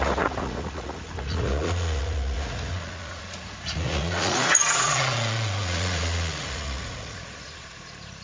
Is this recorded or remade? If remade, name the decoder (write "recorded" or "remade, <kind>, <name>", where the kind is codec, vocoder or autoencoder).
remade, vocoder, Vocos